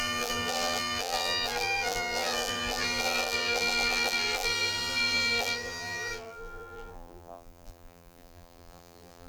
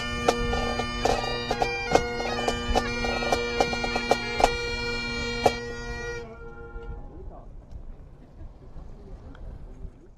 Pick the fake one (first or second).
first